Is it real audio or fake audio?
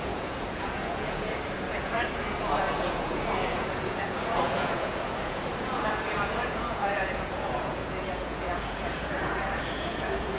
fake